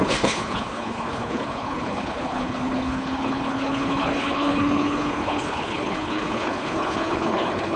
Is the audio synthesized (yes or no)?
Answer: yes